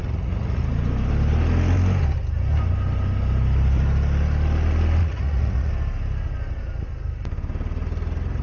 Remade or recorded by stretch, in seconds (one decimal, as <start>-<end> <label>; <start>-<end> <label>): 0.0-0.6 remade; 0.6-5.0 recorded; 5.0-5.7 remade; 5.7-8.4 recorded